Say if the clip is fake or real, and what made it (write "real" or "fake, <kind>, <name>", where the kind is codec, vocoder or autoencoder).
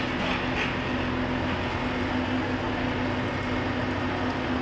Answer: real